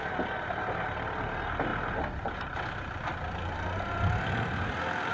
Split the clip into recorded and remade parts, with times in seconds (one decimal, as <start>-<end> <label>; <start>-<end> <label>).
0.0-5.1 recorded